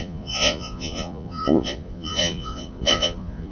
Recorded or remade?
remade